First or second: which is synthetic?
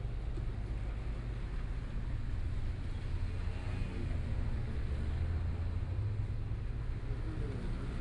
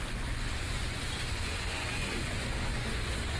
second